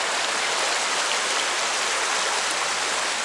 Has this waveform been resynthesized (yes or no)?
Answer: no